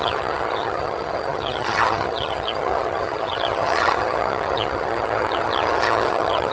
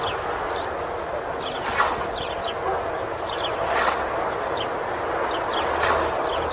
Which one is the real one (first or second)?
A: second